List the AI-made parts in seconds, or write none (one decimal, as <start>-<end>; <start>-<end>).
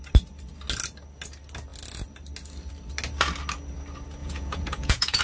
4.2-5.2